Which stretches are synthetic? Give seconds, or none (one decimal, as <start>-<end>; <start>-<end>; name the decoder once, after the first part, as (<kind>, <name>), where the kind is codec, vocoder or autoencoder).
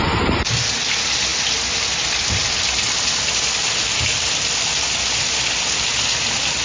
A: none